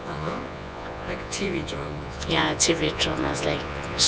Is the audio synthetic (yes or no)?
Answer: yes